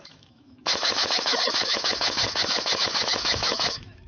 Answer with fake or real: fake